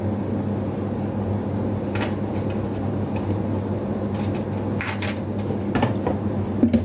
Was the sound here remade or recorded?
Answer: recorded